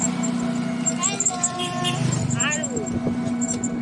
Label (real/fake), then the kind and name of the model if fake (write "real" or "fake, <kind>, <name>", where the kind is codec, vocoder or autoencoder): real